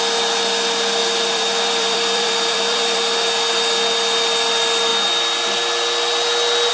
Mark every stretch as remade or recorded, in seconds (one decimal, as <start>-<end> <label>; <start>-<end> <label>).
0.0-1.0 recorded; 1.0-3.0 remade; 3.0-6.7 recorded